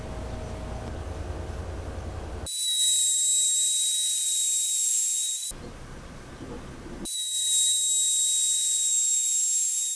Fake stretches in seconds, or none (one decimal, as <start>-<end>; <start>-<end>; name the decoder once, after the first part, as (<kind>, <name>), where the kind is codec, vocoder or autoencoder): none